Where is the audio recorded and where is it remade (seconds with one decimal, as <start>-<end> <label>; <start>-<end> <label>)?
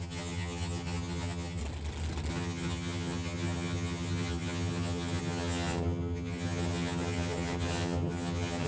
0.0-1.6 remade; 1.6-2.3 recorded; 2.3-8.7 remade